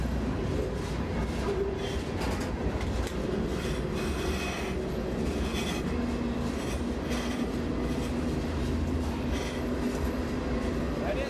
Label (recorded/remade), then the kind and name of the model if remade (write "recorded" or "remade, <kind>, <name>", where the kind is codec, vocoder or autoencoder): recorded